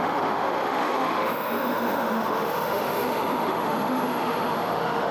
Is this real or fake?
fake